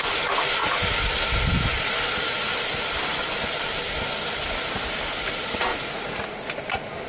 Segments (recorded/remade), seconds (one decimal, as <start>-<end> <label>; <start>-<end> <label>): 0.0-5.7 recorded; 5.7-6.5 remade; 6.5-7.1 recorded